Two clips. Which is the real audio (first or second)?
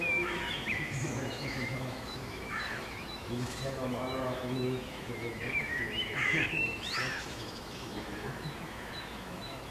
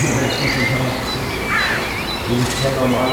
second